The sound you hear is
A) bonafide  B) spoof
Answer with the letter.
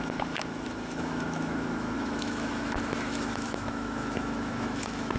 B